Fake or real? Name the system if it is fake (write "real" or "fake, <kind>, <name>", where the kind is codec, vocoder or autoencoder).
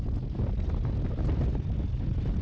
real